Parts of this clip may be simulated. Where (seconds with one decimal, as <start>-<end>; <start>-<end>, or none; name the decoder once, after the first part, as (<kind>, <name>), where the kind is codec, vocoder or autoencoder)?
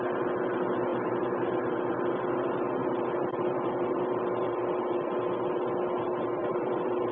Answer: 0.9-2.2 (vocoder, BigVGAN v2); 2.8-5.2; 6.4-7.1